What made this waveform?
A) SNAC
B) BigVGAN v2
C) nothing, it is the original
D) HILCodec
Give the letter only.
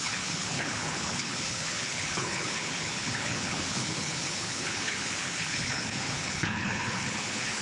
D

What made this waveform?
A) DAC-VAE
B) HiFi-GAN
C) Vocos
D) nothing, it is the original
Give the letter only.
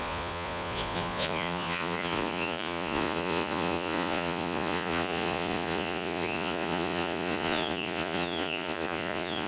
C